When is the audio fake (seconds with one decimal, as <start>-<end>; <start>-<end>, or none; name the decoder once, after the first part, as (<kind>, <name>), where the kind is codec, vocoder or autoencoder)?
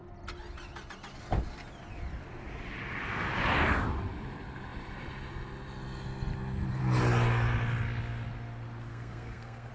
8.9-9.7 (codec, SNAC)